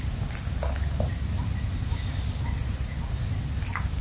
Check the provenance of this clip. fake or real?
real